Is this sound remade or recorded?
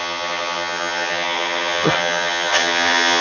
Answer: remade